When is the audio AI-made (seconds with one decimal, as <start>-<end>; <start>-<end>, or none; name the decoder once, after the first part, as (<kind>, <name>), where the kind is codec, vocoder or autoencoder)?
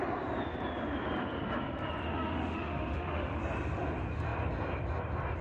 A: 2.0-3.4 (autoencoder, DAC-VAE)